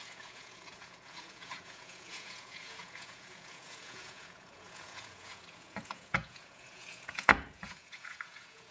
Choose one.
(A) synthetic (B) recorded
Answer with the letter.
A